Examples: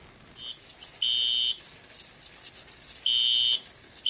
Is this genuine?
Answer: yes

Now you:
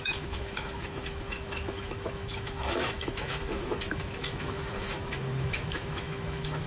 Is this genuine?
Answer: no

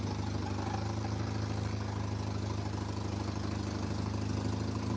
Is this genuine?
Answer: yes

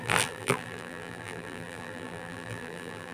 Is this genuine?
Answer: no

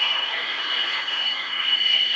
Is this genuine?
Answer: no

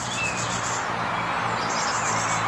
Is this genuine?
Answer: yes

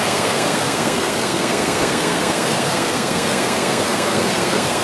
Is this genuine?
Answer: no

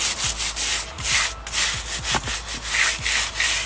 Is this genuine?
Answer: yes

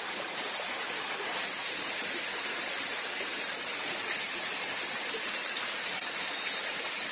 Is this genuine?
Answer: no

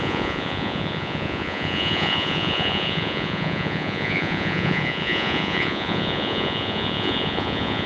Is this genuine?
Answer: no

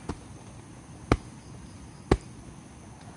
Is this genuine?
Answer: yes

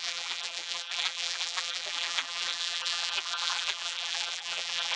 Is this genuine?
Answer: no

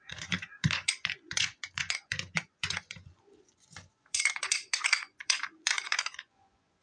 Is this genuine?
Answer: no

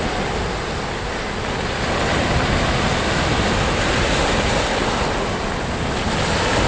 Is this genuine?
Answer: yes